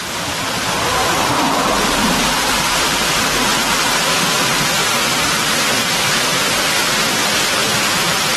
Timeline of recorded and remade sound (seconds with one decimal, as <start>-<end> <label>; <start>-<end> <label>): 0.0-0.6 remade; 0.6-1.0 recorded; 1.0-3.7 remade; 3.7-4.8 recorded; 4.8-5.5 remade; 5.5-8.4 recorded